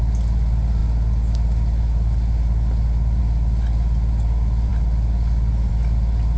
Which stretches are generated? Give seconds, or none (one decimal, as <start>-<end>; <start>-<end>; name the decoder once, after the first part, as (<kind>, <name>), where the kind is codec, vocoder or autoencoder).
none